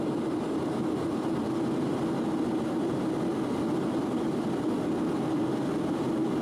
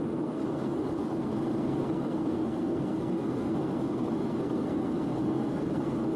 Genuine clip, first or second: first